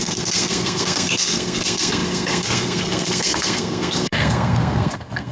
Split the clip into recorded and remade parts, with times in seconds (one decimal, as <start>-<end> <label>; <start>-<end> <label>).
0.0-5.3 remade